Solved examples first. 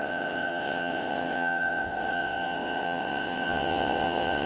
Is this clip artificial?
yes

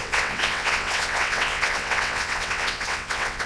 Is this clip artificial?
yes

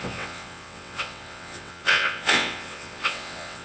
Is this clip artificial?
yes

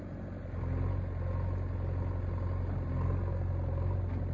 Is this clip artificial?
no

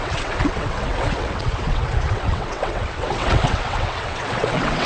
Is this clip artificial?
yes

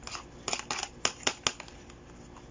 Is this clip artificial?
no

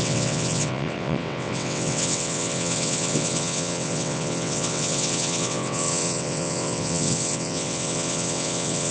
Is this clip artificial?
yes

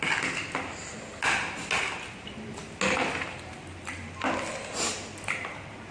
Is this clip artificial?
no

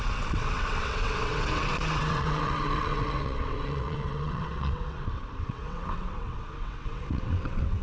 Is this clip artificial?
yes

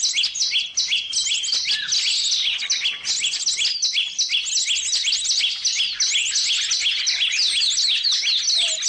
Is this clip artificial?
no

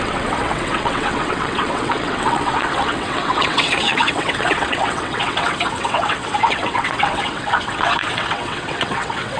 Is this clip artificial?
yes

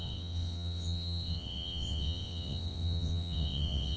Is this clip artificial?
yes